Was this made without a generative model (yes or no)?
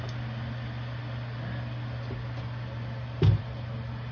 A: yes